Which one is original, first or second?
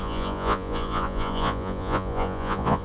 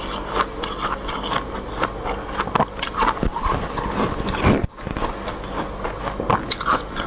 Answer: second